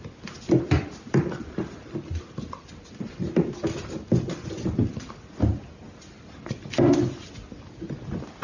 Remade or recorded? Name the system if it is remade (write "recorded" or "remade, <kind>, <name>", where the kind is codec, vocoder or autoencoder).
recorded